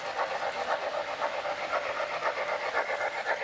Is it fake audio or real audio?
real